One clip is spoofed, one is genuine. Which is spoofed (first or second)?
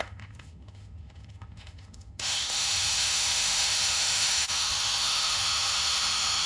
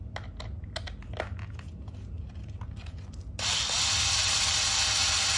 first